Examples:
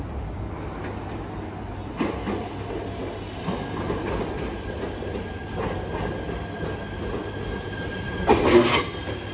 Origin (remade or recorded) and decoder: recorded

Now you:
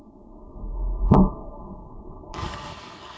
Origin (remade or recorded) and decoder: remade, codec, SNAC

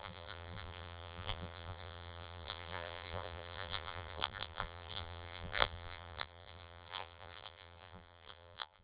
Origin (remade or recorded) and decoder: remade, vocoder, BigVGAN v2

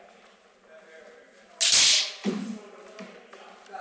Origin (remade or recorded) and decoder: recorded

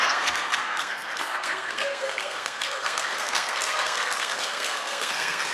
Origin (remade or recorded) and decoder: remade, codec, SNAC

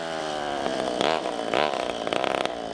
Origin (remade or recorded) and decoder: recorded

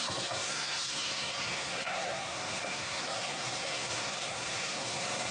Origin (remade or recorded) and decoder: remade, codec, SNAC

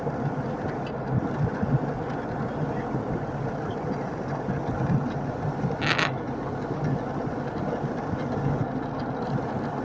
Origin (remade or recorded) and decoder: recorded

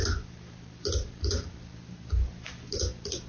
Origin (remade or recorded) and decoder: recorded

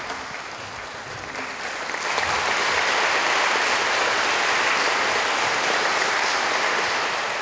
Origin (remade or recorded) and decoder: recorded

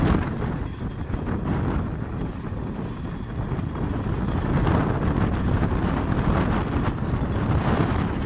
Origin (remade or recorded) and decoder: recorded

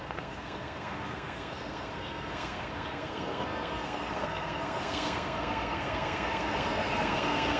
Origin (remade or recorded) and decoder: remade, codec, SNAC